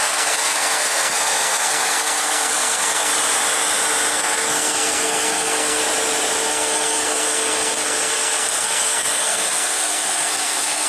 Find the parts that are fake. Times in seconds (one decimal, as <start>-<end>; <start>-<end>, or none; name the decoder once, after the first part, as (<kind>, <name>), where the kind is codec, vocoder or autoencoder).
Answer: 0.0-3.1 (codec, SNAC); 4.1-5.8; 6.5-10.9